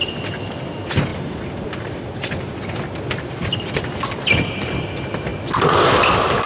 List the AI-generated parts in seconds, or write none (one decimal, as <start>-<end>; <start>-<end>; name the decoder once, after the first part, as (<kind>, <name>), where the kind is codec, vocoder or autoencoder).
1.1-2.4 (vocoder, BigVGAN v2)